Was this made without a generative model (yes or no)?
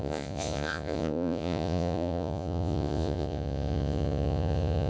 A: no